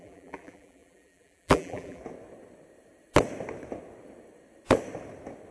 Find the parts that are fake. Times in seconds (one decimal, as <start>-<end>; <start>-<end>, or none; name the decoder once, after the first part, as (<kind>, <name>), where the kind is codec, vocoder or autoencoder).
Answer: 0.0-2.0 (vocoder, BigVGAN v2)